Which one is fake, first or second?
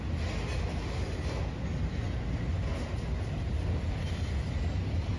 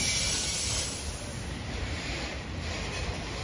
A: second